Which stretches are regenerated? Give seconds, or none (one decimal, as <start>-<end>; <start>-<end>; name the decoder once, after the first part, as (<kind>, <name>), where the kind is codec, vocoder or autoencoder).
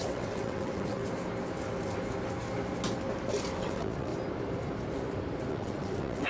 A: 0.0-1.0 (vocoder, WaveNeXt); 3.6-4.1; 5.5-6.3